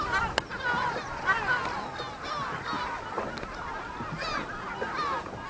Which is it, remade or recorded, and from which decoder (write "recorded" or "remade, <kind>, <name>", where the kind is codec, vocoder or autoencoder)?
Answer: recorded